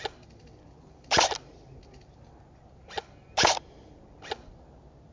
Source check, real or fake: real